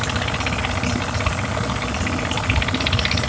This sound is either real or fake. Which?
real